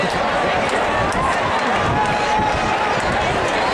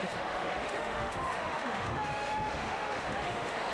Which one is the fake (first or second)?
second